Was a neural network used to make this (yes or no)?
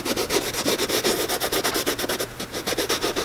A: no